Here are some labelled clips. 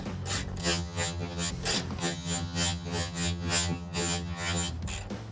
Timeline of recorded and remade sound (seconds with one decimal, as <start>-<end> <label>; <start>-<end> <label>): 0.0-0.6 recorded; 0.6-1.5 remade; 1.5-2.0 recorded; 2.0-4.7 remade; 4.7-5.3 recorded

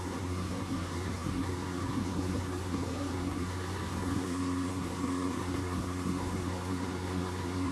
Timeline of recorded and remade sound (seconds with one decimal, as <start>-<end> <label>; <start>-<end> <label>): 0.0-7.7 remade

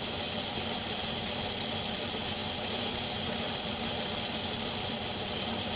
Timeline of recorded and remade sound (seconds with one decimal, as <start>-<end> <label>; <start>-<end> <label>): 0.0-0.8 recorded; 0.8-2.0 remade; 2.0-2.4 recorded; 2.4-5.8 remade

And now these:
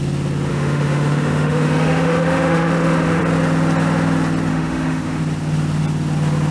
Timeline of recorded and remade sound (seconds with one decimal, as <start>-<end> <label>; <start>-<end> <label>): 0.0-0.5 recorded; 0.5-3.2 remade; 3.2-4.5 recorded; 4.5-5.2 remade; 5.2-6.5 recorded